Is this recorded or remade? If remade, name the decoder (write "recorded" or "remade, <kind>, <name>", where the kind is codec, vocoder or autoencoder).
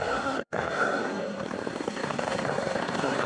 remade, codec, SNAC